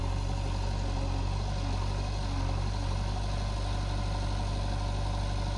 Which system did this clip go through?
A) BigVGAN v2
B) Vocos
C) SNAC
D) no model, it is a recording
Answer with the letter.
D